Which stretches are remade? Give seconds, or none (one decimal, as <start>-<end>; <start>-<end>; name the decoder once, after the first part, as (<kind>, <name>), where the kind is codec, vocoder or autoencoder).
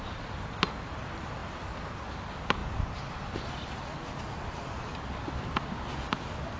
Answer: none